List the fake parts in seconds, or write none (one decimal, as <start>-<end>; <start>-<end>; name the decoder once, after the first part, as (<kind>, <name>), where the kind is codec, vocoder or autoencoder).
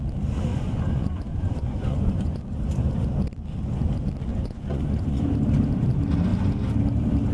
0.5-2.4 (vocoder, Vocos); 4.3-5.2